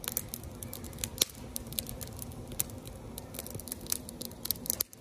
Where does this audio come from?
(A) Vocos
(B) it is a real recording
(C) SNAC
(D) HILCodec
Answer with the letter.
B